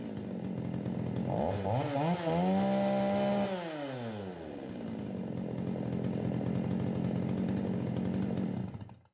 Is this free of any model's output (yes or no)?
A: yes